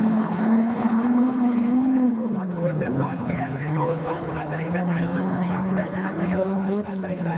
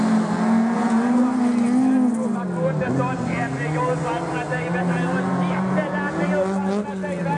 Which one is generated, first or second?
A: first